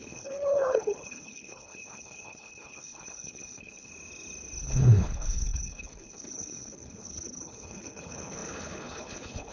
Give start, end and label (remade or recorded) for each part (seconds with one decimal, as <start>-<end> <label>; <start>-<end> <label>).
0.0-3.9 remade; 3.9-4.6 recorded; 4.6-9.5 remade